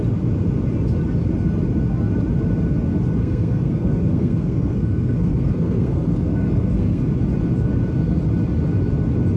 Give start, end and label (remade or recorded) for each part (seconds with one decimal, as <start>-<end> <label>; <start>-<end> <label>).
0.0-3.2 recorded; 3.2-7.0 remade; 7.0-9.4 recorded